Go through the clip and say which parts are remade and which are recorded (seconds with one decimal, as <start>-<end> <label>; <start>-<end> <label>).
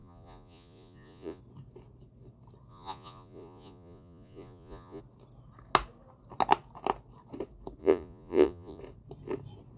0.0-1.4 remade; 1.4-2.7 recorded; 2.7-5.0 remade; 5.0-7.8 recorded; 7.8-8.8 remade; 8.8-9.8 recorded